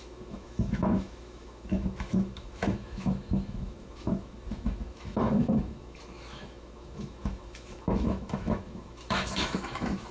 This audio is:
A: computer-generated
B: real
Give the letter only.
A